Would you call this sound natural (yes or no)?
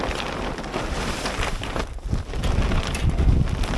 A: yes